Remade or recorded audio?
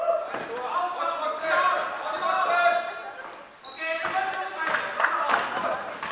recorded